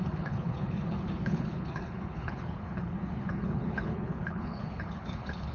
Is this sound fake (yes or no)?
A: yes